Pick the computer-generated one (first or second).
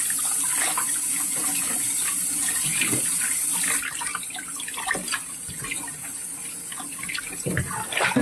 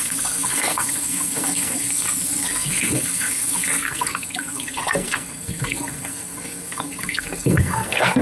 second